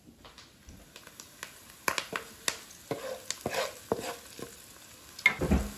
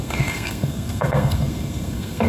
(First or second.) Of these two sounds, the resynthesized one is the second